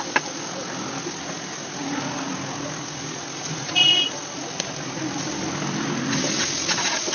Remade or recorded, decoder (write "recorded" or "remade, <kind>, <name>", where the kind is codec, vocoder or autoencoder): recorded